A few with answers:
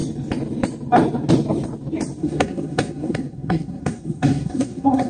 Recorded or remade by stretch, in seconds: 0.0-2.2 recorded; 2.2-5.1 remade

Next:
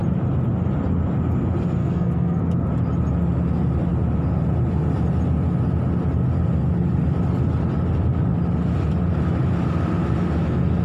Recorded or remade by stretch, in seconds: 0.0-1.8 recorded; 1.8-2.4 remade; 2.4-10.8 recorded

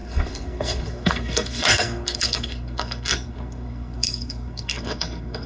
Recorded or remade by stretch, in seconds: 0.0-5.5 remade